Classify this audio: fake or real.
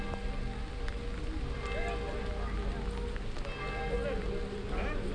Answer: real